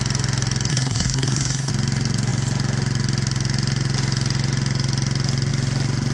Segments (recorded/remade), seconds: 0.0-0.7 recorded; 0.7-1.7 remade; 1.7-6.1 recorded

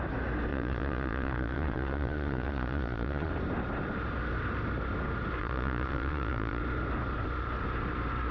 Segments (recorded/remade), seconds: 0.0-0.5 recorded; 0.5-3.3 remade; 3.3-5.4 recorded; 5.4-6.6 remade; 6.6-8.3 recorded

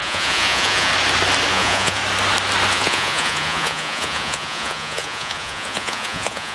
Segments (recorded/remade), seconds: 0.0-0.9 remade; 0.9-1.5 recorded; 1.5-2.0 remade; 2.0-2.7 recorded; 2.7-6.5 remade

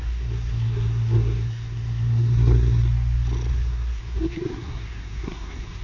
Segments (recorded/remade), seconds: 0.0-2.8 remade; 2.8-3.5 recorded; 3.5-5.8 remade

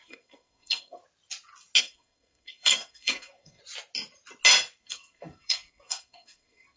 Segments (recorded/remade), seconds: 0.0-1.0 remade; 1.0-1.8 recorded; 1.8-3.6 remade; 3.6-4.8 recorded; 4.8-6.8 remade